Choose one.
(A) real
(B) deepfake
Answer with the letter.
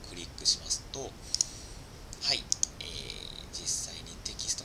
A